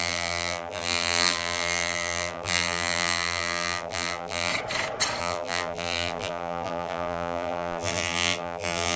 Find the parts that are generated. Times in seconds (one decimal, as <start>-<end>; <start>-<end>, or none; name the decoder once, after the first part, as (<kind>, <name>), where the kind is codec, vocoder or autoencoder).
0.0-4.5 (vocoder, BigVGAN v2); 5.2-9.0